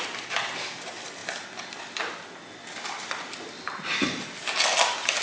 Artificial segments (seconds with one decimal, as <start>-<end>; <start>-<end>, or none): none